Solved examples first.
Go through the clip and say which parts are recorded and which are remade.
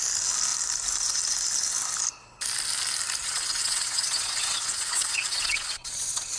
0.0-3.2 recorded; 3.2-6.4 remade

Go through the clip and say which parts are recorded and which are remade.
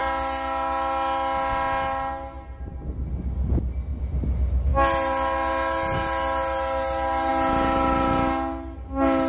0.0-9.3 recorded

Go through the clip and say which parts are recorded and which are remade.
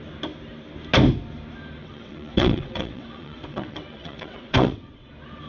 0.0-1.8 recorded; 1.8-5.1 remade; 5.1-5.5 recorded